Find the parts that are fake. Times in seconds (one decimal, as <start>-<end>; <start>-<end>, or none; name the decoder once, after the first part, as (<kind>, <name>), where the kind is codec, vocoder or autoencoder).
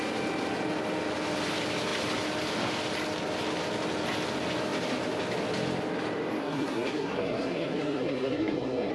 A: 6.4-8.9 (codec, SNAC)